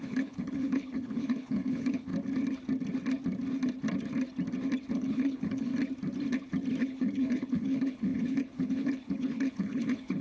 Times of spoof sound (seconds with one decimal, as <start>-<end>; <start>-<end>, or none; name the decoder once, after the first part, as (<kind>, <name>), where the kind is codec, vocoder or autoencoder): 0.0-2.1 (codec, HILCodec); 4.9-5.7; 6.8-10.2